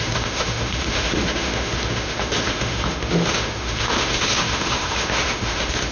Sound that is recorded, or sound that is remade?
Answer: remade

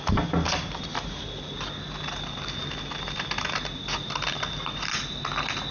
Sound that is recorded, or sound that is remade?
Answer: recorded